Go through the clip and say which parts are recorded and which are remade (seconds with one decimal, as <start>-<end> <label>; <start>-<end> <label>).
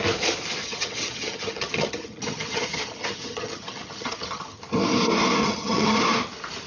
0.0-0.6 recorded; 0.6-4.6 remade; 4.6-5.4 recorded; 5.4-6.0 remade; 6.0-6.7 recorded